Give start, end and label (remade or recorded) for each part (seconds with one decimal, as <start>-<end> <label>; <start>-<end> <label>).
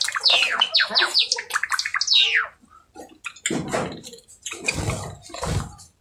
0.0-6.0 recorded